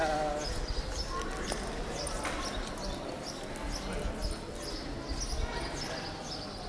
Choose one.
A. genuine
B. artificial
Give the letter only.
A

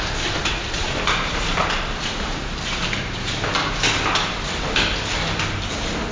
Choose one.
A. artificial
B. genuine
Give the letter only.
B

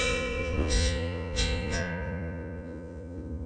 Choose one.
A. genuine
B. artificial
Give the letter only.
B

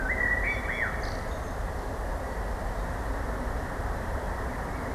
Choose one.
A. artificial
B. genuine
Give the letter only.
B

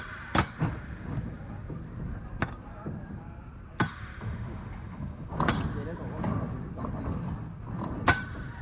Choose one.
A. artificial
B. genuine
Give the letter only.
B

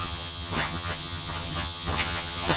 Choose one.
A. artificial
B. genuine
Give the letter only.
A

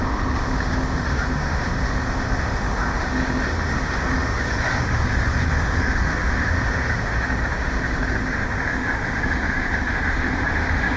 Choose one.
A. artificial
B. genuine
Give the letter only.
A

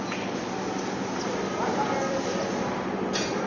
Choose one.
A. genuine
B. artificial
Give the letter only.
A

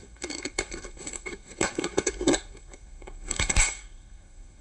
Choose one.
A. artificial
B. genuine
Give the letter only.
A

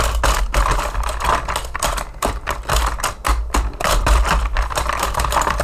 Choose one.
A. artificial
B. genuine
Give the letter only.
B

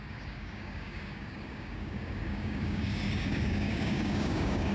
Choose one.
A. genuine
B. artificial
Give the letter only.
B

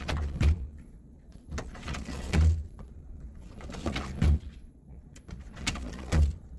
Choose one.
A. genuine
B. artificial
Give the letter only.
B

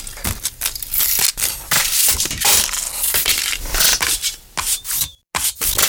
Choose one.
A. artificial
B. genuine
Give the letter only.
B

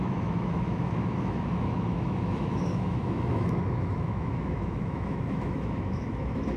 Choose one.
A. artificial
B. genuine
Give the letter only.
A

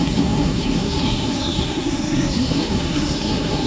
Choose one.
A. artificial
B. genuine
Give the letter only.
A